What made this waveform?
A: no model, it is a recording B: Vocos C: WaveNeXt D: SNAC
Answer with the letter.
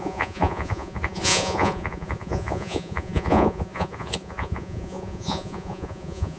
B